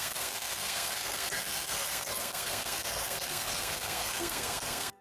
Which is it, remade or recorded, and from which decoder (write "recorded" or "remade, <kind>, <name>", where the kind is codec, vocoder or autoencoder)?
remade, codec, SNAC